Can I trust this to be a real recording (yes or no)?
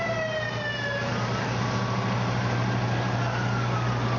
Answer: yes